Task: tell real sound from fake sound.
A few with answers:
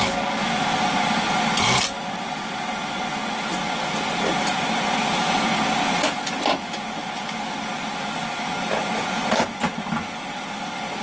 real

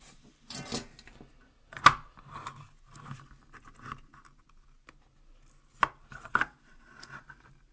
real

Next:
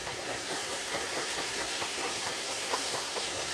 fake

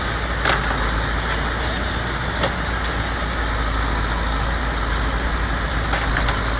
real